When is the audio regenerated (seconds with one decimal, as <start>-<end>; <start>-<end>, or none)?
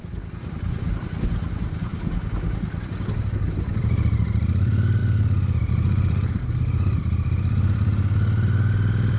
0.0-1.9; 2.8-9.2